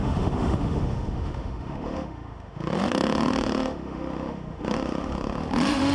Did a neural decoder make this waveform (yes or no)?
yes